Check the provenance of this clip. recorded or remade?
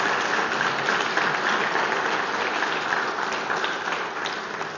recorded